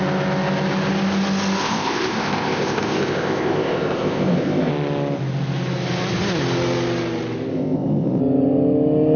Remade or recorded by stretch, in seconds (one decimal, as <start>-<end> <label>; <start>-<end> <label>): 0.0-1.6 recorded; 1.6-4.7 remade; 4.7-7.5 recorded; 7.5-8.2 remade; 8.2-9.2 recorded